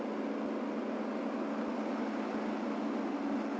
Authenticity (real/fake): real